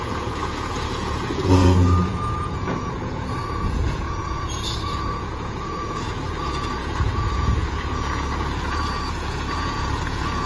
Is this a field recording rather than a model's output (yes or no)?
no